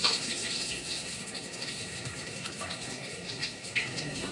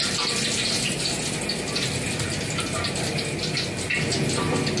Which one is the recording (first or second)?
second